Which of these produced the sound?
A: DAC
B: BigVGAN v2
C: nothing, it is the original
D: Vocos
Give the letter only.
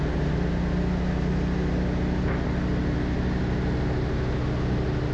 C